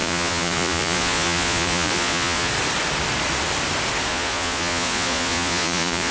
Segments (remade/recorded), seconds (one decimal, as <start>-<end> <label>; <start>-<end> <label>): 0.0-2.5 remade; 2.5-4.1 recorded; 4.1-6.1 remade